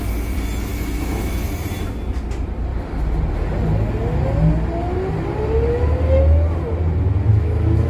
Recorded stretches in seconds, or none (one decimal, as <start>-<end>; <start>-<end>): 0.0-0.7; 1.5-7.3